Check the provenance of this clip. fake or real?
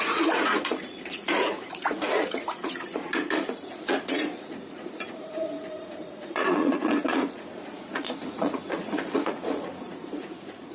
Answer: fake